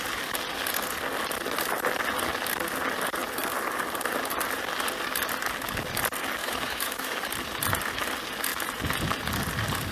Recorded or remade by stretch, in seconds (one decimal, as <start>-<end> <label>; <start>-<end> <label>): 0.0-6.4 recorded; 6.4-7.1 remade; 7.1-9.9 recorded

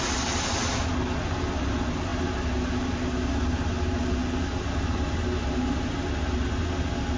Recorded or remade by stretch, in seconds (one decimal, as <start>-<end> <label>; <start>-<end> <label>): 0.0-7.2 recorded

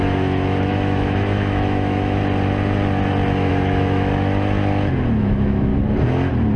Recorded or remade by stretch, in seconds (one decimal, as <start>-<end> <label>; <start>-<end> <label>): 0.0-2.2 remade; 2.2-3.5 recorded; 3.5-4.1 remade; 4.1-5.2 recorded; 5.2-5.7 remade; 5.7-6.6 recorded

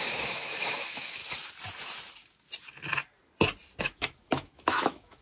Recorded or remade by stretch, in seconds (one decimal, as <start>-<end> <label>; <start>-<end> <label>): 0.0-1.2 remade; 1.2-3.8 recorded; 3.8-5.2 remade

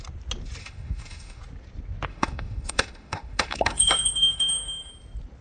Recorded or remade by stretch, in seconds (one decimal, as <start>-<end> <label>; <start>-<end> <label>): 0.0-0.6 recorded; 0.6-1.4 remade; 1.4-2.1 recorded; 2.1-4.9 remade; 4.9-5.4 recorded

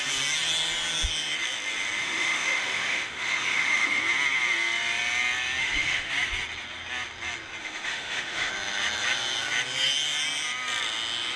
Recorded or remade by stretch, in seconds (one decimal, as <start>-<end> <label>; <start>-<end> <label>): 0.0-2.0 recorded; 2.0-4.0 remade; 4.0-5.6 recorded; 5.6-6.1 remade; 6.1-7.6 recorded; 7.6-8.5 remade; 8.5-11.4 recorded

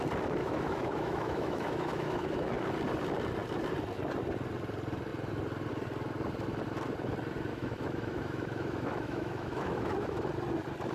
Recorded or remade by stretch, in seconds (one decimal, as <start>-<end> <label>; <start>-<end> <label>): 0.0-0.4 recorded; 0.4-2.5 remade; 2.5-7.5 recorded; 7.5-10.3 remade; 10.3-10.9 recorded